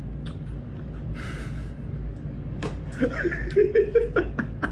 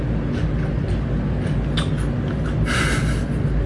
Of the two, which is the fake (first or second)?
first